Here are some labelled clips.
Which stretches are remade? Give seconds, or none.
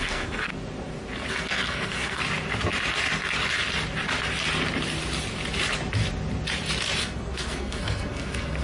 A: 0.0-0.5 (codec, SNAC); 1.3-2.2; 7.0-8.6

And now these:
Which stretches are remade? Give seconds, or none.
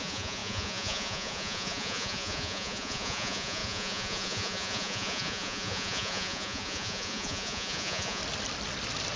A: 0.0-8.2 (vocoder, Vocos)